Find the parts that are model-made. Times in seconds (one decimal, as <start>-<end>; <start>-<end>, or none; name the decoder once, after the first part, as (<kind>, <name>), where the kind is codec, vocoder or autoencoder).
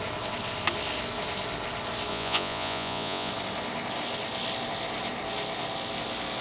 2.1-3.3 (vocoder, Vocos)